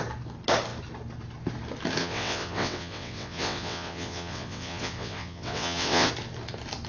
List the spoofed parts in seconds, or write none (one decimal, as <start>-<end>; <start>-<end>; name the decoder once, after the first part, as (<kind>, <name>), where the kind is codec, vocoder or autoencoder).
2.0-6.1 (vocoder, WaveNeXt)